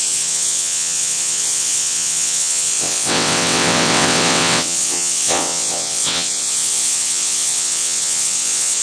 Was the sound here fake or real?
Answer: fake